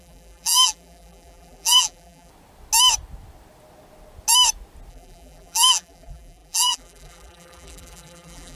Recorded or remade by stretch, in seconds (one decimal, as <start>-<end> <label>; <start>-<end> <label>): 0.0-2.3 remade; 2.3-4.9 recorded; 4.9-8.6 remade

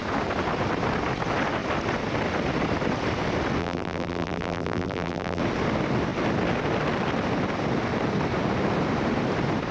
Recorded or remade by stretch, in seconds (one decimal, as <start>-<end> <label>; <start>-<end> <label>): 0.0-3.6 recorded; 3.6-5.4 remade; 5.4-9.7 recorded

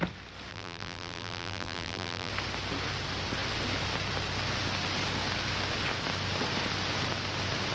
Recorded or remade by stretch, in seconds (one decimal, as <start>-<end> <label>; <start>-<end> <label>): 0.0-0.5 recorded; 0.5-2.3 remade; 2.3-7.7 recorded

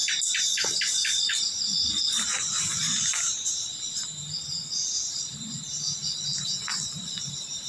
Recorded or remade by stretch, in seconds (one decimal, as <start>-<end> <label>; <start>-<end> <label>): 0.0-0.5 remade; 0.5-1.2 recorded; 1.2-4.4 remade; 4.4-7.7 recorded